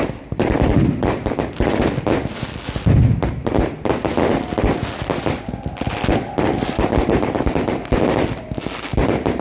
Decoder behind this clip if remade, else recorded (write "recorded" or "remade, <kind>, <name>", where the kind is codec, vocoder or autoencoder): recorded